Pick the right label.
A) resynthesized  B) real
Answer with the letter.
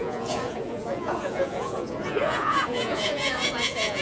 A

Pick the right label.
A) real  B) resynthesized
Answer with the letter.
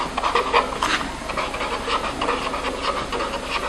A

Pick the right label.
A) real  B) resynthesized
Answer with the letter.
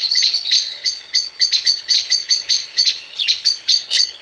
B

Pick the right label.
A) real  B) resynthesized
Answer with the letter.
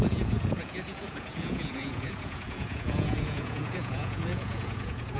B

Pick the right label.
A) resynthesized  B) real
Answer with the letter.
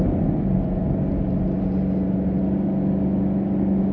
B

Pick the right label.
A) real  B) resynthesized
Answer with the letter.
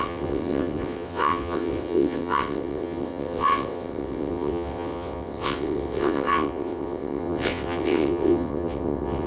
B